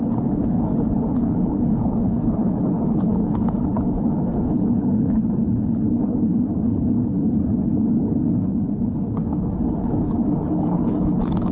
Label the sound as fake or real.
fake